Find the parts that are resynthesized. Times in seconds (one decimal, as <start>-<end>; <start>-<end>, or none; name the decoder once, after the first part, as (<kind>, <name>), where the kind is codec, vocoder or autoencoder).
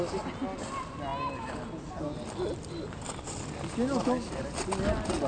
none